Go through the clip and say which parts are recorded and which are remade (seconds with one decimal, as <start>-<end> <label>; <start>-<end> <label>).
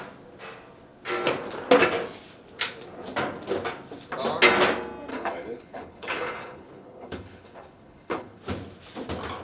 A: 0.0-5.1 recorded; 5.1-8.4 remade; 8.4-9.4 recorded